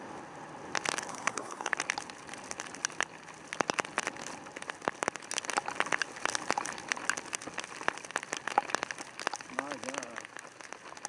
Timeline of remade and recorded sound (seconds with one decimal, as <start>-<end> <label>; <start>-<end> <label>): 0.0-1.1 recorded; 1.1-1.7 remade; 1.7-11.1 recorded